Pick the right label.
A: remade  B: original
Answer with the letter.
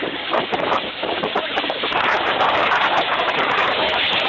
A